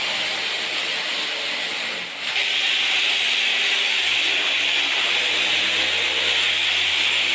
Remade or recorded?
recorded